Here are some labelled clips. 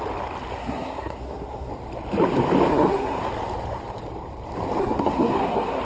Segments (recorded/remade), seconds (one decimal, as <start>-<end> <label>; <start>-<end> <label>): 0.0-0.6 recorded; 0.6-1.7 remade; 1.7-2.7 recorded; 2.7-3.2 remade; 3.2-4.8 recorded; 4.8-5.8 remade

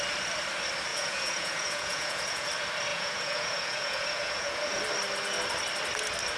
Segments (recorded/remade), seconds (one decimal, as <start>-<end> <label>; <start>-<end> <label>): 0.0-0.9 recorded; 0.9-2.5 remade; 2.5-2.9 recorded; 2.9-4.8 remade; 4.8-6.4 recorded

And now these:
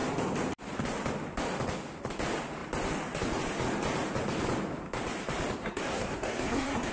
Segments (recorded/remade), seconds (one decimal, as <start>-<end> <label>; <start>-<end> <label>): 0.0-5.6 recorded; 5.6-6.9 remade

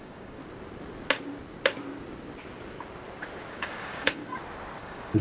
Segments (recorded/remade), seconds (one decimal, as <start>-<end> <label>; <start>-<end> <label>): 0.0-0.4 remade; 0.4-3.5 recorded; 3.5-4.2 remade; 4.2-4.8 recorded; 4.8-5.2 remade